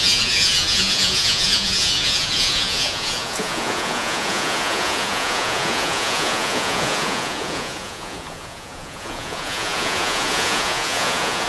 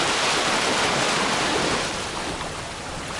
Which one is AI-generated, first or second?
first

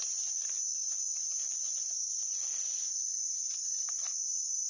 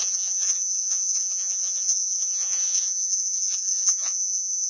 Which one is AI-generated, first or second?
second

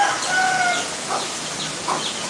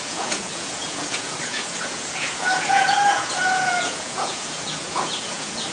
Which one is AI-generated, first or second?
second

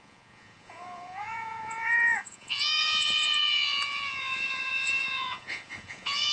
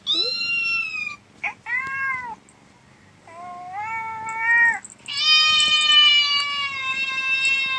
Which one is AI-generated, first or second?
first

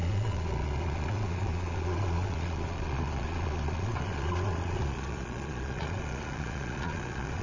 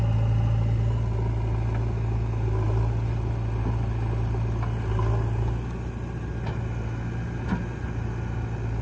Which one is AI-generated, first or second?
first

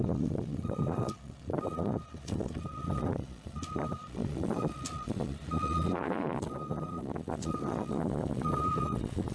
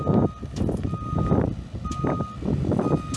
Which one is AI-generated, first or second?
first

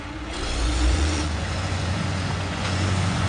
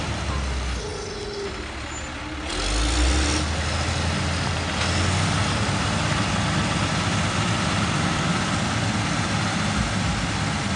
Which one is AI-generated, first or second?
first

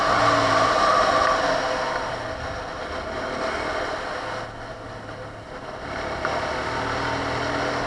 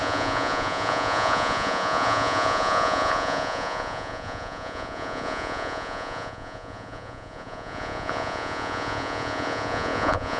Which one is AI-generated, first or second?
second